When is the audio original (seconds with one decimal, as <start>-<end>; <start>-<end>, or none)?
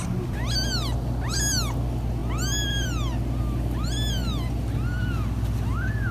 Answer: 0.0-6.1